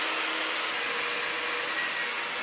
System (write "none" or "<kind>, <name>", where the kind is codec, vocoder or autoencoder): none